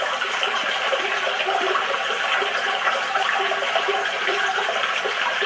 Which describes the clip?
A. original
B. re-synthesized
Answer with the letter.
B